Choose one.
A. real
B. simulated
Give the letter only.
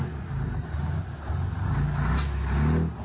A